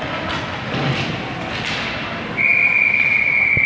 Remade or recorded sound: recorded